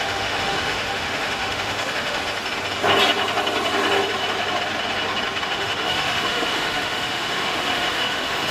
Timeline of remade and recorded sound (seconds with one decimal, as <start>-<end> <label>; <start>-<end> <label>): 0.0-2.2 remade; 2.2-5.4 recorded; 5.4-8.5 remade